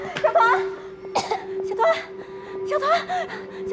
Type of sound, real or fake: real